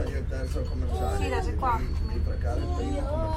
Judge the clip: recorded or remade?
recorded